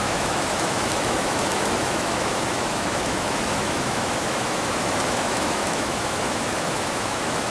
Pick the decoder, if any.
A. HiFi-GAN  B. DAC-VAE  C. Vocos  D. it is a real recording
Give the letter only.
B